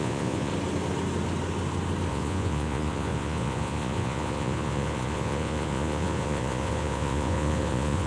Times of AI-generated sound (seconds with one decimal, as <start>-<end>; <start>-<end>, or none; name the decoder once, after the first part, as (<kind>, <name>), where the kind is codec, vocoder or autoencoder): 0.0-0.5 (vocoder, Vocos); 2.1-8.1